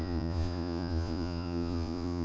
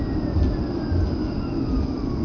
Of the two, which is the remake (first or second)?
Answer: first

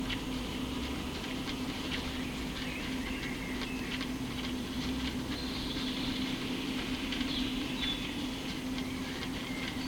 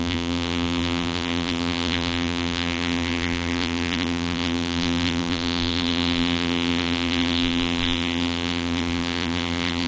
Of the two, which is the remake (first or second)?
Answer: second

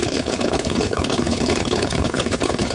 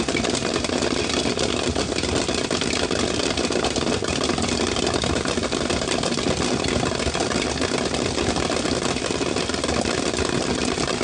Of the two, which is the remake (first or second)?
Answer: first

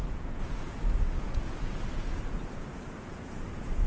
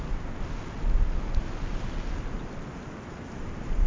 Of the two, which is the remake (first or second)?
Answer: first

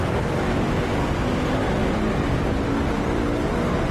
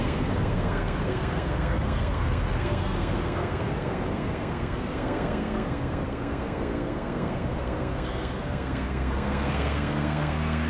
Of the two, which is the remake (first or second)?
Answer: second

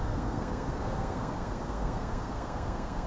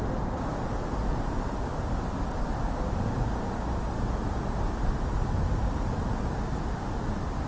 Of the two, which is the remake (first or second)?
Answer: first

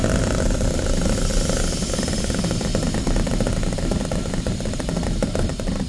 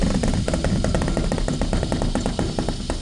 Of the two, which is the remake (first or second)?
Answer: first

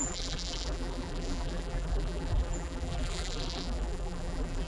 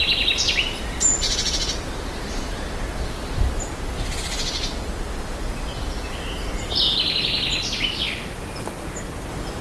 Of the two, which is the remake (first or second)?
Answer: first